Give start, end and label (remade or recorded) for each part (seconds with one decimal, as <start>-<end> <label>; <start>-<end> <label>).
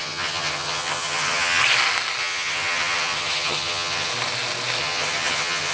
0.0-1.6 remade; 1.6-2.2 recorded; 2.2-4.1 remade; 4.1-4.8 recorded; 4.8-5.7 remade